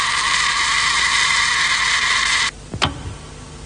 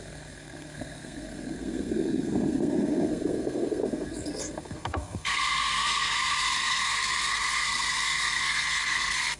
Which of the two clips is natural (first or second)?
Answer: first